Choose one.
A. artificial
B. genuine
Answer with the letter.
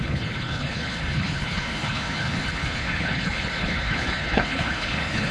A